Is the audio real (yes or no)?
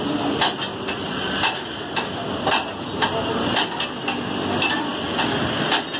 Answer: yes